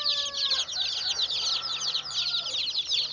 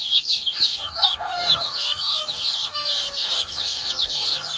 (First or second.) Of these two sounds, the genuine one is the first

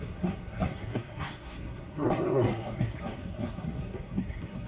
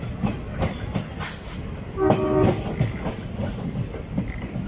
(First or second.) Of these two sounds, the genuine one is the second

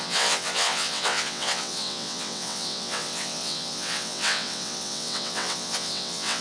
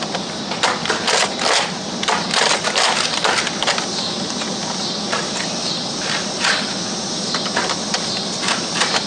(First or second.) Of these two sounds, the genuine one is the second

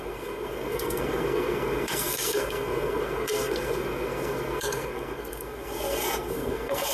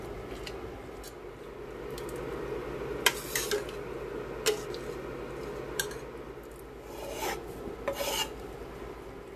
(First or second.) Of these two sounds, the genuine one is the second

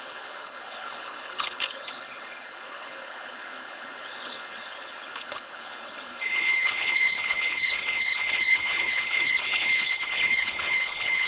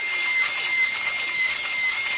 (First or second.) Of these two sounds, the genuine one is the second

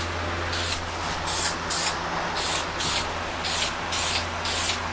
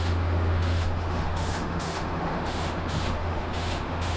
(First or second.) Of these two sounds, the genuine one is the first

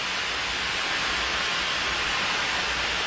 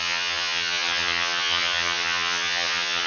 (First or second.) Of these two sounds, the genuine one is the first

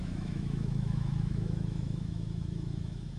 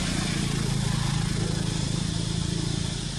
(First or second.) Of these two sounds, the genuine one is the second